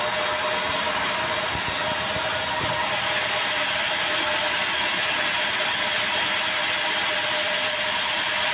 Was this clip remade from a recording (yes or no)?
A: no